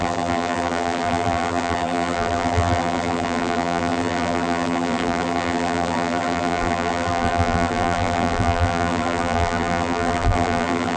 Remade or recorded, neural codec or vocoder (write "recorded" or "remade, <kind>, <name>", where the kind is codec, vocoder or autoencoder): remade, vocoder, BigVGAN v2